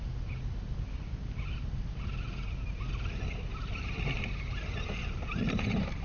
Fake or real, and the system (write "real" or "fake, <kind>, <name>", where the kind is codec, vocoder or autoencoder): real